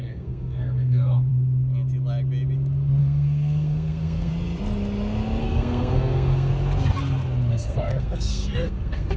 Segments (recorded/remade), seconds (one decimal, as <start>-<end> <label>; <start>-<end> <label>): 0.0-1.3 remade; 1.3-3.0 recorded; 3.0-4.3 remade; 4.3-5.4 recorded; 5.4-6.5 remade; 6.5-7.5 recorded; 7.5-9.2 remade